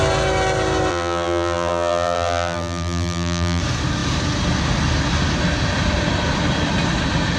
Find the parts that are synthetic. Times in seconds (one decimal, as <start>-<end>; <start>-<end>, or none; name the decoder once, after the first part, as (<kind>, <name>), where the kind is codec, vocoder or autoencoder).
0.9-3.6 (vocoder, BigVGAN v2)